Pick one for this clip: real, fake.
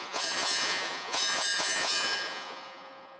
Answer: fake